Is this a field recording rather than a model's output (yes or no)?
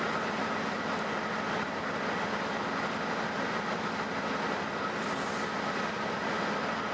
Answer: yes